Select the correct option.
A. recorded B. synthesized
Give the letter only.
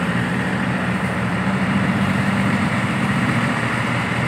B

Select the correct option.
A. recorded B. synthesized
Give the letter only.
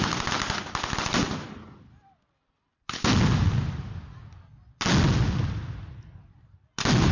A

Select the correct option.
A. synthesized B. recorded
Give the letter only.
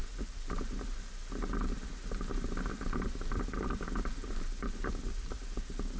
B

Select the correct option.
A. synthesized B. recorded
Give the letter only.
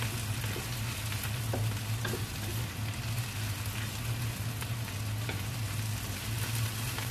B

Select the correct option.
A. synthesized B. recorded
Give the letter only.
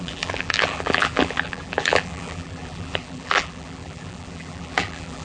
A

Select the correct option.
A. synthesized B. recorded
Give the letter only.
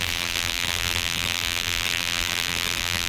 A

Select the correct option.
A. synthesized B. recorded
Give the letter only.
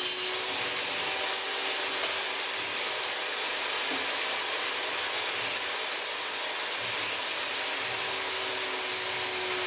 B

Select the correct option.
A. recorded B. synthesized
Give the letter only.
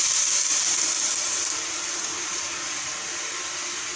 A